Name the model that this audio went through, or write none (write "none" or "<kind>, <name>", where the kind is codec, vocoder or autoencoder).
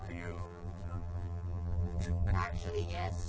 vocoder, BigVGAN v2